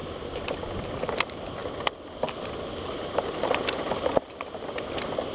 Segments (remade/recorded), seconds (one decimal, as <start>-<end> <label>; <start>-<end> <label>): 0.0-5.3 recorded